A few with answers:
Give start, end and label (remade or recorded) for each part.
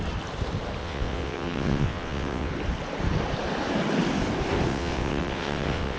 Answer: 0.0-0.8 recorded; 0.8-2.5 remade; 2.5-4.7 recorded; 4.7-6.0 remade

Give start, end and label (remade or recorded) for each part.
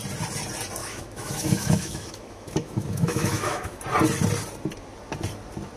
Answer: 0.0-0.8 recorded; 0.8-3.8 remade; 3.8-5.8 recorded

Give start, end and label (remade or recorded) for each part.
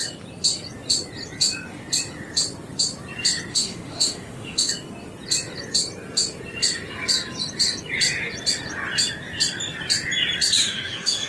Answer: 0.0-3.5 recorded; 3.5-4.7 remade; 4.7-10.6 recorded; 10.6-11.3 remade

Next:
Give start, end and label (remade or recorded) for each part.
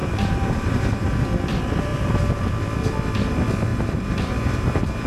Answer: 0.0-1.2 remade; 1.2-1.9 recorded; 1.9-2.4 remade; 2.4-3.7 recorded; 3.7-5.1 remade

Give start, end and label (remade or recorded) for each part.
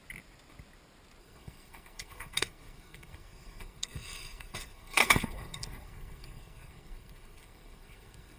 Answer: 0.0-1.2 recorded; 1.2-8.4 remade